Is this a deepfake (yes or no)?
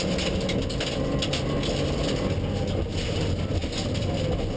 no